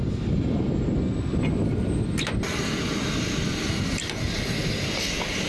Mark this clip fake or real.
real